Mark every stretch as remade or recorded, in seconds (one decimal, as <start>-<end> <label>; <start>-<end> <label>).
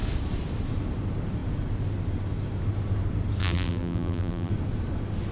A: 0.0-3.4 recorded; 3.4-4.5 remade; 4.5-5.3 recorded